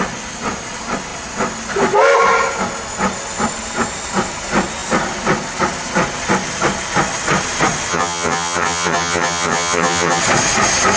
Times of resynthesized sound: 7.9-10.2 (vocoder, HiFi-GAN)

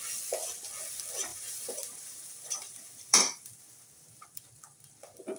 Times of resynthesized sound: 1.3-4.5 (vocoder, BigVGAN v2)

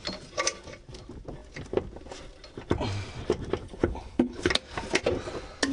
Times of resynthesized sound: 3.6-4.5 (codec, HILCodec)